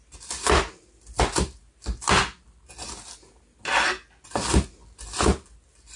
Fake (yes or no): no